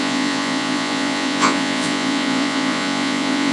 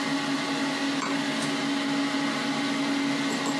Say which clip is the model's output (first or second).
first